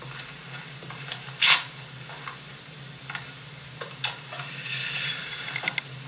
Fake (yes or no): no